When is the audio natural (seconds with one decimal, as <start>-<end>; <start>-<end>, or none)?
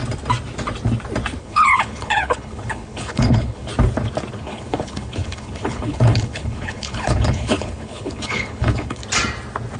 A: 0.0-1.4; 3.7-4.3; 9.0-9.8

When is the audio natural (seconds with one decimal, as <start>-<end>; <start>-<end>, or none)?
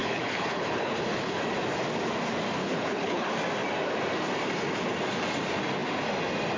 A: 1.4-2.6; 3.3-6.6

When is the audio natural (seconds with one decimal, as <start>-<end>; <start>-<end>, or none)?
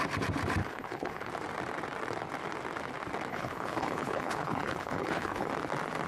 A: 0.0-0.6; 1.3-3.3; 5.5-6.1